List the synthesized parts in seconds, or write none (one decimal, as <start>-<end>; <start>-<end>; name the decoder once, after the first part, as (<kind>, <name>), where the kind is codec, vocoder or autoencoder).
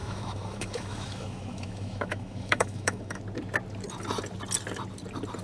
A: 0.0-3.2 (autoencoder, DAC-VAE)